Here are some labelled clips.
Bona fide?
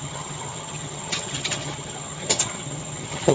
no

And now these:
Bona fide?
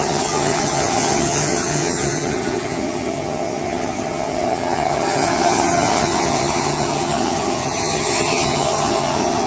no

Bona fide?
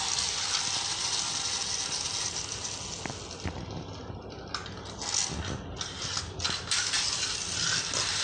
yes